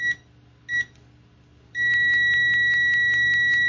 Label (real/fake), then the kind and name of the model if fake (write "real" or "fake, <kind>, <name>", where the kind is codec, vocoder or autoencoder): real